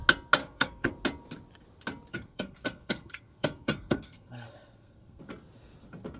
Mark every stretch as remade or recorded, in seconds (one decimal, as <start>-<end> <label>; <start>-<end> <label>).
0.0-0.4 recorded; 0.4-0.9 remade; 0.9-2.1 recorded; 2.1-5.2 remade; 5.2-6.2 recorded